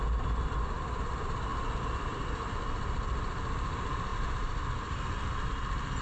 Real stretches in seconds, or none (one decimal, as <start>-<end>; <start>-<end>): 0.0-6.0